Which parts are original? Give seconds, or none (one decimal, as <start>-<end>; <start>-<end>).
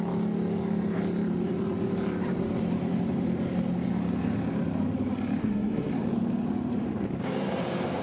0.0-5.4; 5.9-8.0